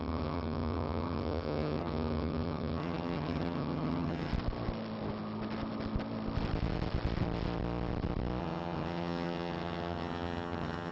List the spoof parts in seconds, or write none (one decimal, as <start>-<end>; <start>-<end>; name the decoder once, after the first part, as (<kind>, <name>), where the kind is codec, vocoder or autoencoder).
0.0-4.3 (vocoder, HiFi-GAN); 8.4-10.9